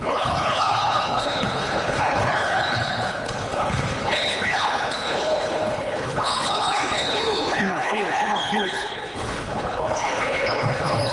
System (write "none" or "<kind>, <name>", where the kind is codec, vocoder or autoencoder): codec, HILCodec